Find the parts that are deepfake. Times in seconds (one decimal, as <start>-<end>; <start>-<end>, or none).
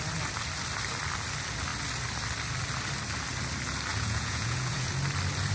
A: 3.9-4.9